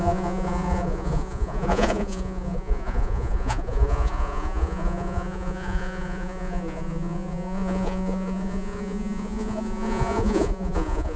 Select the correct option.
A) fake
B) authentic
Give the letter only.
A